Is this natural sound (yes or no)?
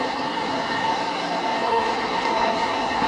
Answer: no